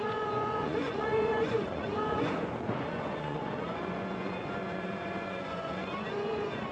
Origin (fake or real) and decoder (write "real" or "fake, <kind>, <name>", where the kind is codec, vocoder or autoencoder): fake, vocoder, Vocos